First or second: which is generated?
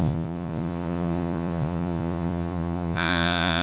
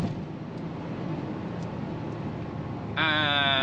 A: first